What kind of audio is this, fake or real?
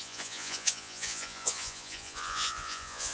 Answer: fake